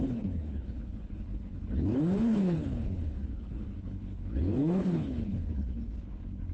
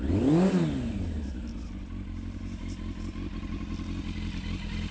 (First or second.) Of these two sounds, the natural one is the second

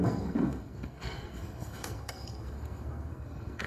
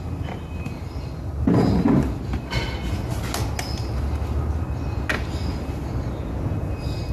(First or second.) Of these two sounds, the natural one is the second